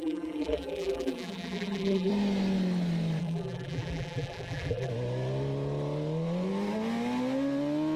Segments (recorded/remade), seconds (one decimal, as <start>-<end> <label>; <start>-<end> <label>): 0.0-2.1 remade; 2.1-3.2 recorded; 3.2-4.9 remade; 4.9-8.0 recorded